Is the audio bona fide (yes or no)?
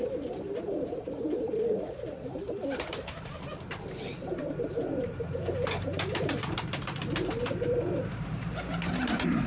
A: no